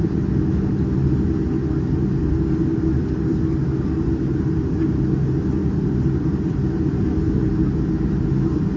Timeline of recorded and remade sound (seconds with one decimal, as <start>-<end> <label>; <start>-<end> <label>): 0.0-5.6 recorded; 5.6-7.7 remade; 7.7-8.8 recorded